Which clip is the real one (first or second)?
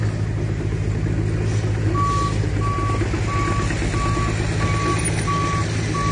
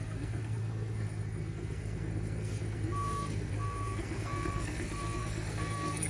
first